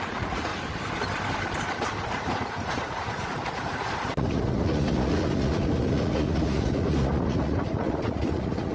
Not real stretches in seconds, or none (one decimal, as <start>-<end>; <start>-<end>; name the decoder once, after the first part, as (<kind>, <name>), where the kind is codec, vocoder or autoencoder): 0.0-0.5 (vocoder, Vocos); 2.0-8.7